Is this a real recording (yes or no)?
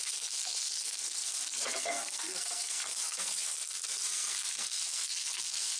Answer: no